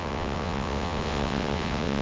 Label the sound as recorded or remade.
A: remade